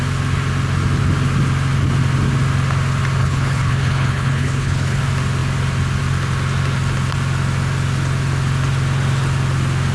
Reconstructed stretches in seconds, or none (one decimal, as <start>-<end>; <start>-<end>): 3.2-5.0